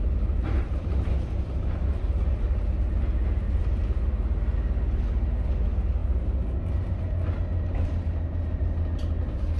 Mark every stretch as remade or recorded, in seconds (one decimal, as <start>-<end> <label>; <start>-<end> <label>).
0.0-9.6 recorded